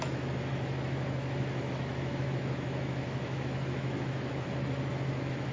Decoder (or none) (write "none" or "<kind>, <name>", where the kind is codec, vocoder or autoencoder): autoencoder, DAC-VAE